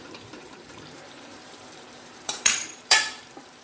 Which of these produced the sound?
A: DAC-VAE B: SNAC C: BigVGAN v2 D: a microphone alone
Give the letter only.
C